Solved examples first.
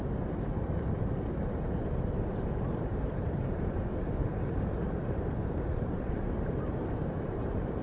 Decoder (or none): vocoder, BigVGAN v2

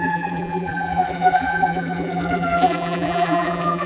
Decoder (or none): vocoder, BigVGAN v2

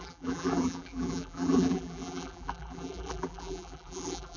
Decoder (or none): vocoder, BigVGAN v2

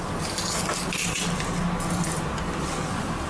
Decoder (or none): none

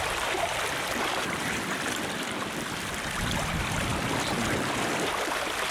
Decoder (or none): vocoder, BigVGAN v2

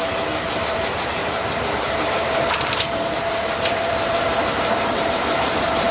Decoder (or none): vocoder, BigVGAN v2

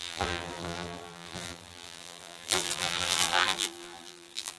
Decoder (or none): vocoder, BigVGAN v2